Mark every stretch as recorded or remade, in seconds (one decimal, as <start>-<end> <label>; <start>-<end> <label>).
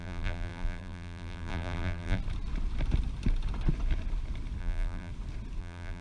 0.0-2.2 remade; 2.2-4.6 recorded; 4.6-5.1 remade; 5.1-5.6 recorded; 5.6-6.0 remade